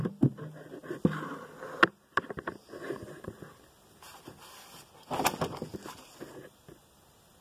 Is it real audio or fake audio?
real